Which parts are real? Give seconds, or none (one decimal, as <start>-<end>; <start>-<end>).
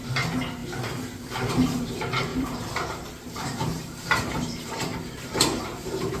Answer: 0.0-2.3